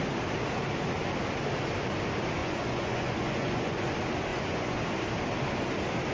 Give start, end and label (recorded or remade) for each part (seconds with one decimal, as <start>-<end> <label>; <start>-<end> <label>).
0.0-2.4 recorded; 2.4-3.9 remade; 3.9-4.3 recorded; 4.3-4.8 remade; 4.8-6.1 recorded